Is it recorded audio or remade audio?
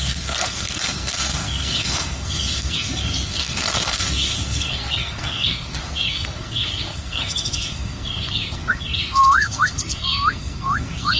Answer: remade